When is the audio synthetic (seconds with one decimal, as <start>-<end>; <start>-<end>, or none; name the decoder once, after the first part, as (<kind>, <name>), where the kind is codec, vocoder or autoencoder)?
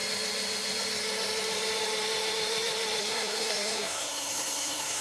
3.0-5.0 (codec, SNAC)